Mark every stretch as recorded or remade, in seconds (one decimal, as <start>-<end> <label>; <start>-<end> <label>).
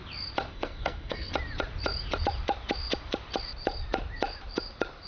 0.0-0.5 recorded; 0.5-1.3 remade; 1.3-5.1 recorded